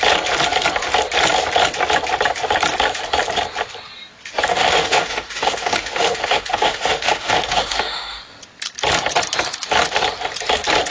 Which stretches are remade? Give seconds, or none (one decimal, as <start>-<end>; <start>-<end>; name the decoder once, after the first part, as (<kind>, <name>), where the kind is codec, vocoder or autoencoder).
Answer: 4.5-8.2 (autoencoder, DAC-VAE)